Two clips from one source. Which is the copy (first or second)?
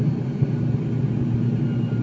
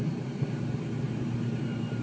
second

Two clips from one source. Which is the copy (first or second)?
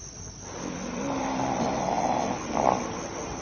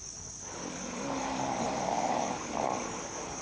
second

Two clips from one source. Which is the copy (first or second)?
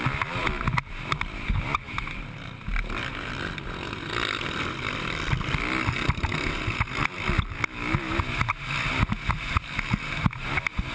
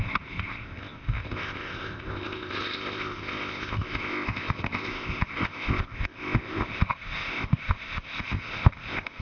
second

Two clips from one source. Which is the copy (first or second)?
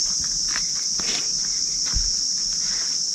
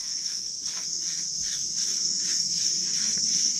second